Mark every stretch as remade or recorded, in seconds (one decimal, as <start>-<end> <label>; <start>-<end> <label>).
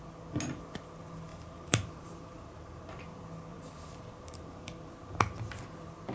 0.0-1.3 recorded; 1.3-3.0 remade; 3.0-3.5 recorded; 3.5-4.9 remade; 4.9-6.1 recorded